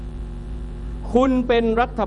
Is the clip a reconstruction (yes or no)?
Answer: yes